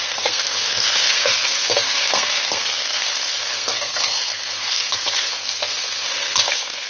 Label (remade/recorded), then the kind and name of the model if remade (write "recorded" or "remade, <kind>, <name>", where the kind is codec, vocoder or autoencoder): remade, codec, SNAC